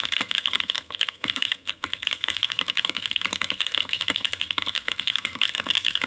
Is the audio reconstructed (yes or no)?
yes